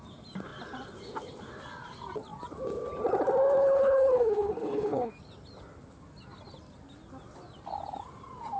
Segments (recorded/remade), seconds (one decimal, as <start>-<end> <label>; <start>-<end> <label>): 0.0-3.6 recorded; 3.6-5.1 remade; 5.1-8.6 recorded